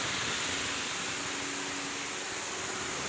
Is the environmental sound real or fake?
real